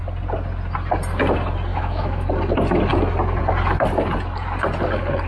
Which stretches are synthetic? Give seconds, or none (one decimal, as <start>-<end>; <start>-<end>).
1.7-2.3